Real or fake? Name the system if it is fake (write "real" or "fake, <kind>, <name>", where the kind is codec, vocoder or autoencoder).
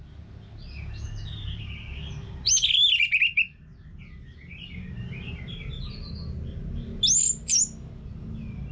real